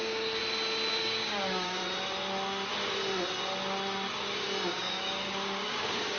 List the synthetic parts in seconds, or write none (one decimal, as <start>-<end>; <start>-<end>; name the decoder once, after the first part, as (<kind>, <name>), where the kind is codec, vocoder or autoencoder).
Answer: 0.0-0.4 (codec, DAC); 0.9-1.8; 4.7-6.2